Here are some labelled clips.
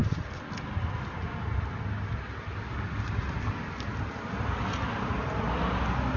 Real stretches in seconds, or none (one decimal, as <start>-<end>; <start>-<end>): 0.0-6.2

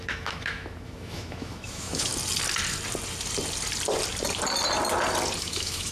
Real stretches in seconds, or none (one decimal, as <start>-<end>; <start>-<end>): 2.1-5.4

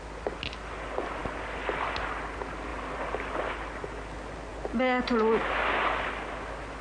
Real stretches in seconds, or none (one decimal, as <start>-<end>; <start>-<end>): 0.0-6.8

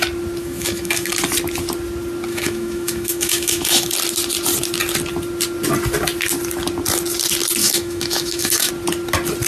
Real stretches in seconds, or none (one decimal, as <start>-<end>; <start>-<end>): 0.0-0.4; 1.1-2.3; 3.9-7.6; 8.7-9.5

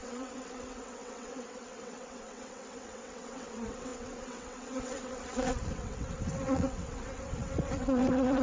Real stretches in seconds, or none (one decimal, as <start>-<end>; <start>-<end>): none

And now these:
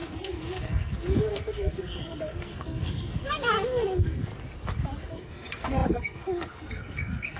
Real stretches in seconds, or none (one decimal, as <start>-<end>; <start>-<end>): 4.3-5.0

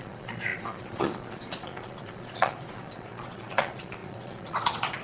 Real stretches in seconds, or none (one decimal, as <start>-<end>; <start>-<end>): none